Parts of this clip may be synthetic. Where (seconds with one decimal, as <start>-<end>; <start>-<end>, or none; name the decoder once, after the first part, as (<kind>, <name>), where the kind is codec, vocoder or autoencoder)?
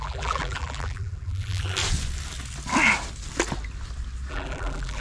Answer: 0.0-1.8 (vocoder, BigVGAN v2); 4.3-5.0